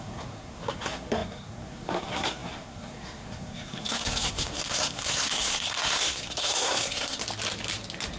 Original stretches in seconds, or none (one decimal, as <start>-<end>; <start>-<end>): 7.2-8.2

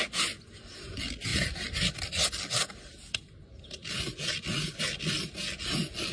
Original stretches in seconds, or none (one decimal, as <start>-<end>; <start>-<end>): 0.0-6.1

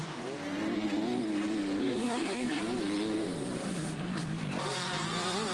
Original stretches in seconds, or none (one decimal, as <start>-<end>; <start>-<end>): 0.0-1.8; 2.6-3.6; 4.4-5.5

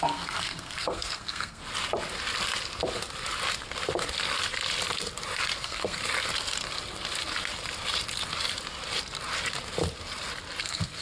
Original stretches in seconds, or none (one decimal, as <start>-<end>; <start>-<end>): 1.6-5.6; 6.0-10.6